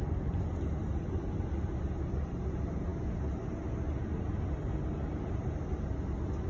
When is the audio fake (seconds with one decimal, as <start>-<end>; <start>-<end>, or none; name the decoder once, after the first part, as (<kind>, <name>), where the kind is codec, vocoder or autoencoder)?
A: none